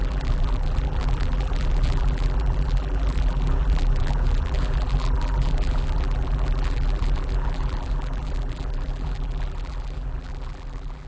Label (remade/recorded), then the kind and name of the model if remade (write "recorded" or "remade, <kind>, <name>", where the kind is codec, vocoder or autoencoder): remade, vocoder, BigVGAN v2